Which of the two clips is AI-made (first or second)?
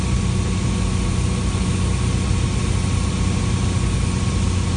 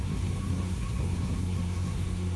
second